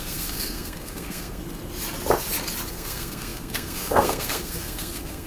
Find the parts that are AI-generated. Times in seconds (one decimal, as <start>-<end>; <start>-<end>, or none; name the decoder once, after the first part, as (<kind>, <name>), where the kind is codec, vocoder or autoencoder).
0.0-1.4 (codec, SNAC); 2.7-5.3

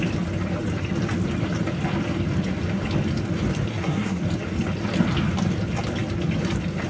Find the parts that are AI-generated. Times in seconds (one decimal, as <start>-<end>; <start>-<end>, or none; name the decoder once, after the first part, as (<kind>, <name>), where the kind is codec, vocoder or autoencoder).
3.7-4.2 (codec, SNAC)

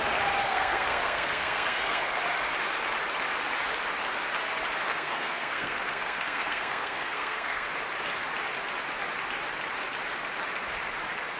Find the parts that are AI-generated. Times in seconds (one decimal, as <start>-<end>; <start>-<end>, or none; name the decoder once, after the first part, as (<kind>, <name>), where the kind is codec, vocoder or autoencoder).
0.4-2.2 (codec, SNAC); 4.9-7.7

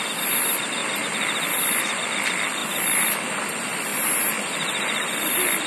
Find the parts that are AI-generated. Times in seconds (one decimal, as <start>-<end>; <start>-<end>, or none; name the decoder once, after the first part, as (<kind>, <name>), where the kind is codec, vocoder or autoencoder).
none

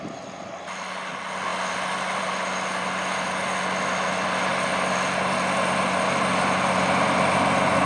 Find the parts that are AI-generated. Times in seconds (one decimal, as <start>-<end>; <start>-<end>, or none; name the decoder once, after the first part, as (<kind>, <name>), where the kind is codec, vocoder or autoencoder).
none

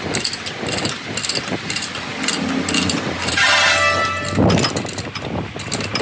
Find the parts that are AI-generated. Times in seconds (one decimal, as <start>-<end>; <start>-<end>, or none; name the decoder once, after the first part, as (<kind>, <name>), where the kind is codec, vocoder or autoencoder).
none